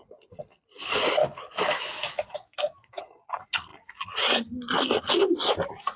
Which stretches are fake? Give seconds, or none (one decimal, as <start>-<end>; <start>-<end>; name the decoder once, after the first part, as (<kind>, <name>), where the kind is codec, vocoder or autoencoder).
1.2-3.0 (autoencoder, DAC-VAE)